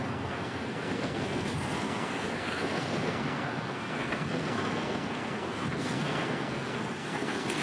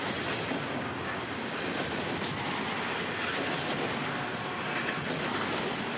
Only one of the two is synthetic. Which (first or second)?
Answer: first